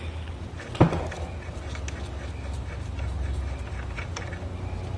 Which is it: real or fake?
real